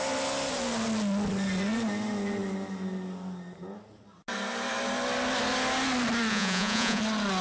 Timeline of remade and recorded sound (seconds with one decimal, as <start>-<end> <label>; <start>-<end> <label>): 0.0-6.3 recorded; 6.3-7.0 remade; 7.0-7.4 recorded